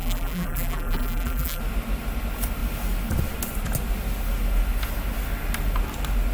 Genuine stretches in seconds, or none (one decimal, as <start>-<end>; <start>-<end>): 1.6-6.3